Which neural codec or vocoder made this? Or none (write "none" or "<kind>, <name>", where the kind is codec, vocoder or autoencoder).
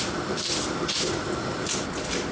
none